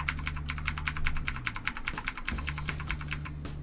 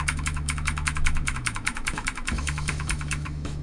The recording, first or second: first